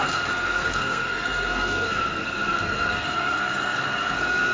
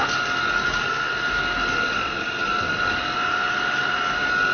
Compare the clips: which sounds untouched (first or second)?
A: second